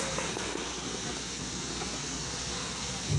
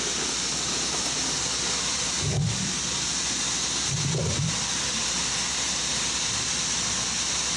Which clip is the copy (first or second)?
first